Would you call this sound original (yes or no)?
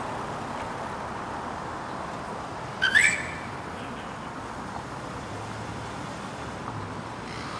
yes